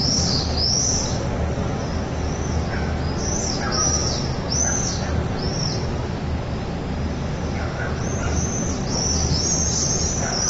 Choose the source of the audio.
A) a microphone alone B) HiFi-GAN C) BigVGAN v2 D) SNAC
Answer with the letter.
A